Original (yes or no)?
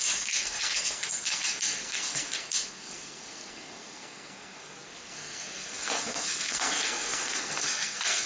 no